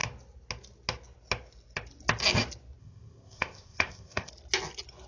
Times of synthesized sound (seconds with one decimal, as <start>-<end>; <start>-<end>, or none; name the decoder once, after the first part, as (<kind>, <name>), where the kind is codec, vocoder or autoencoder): 2.8-4.3 (codec, ZipCodec)